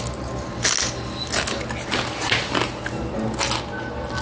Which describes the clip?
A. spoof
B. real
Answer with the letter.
B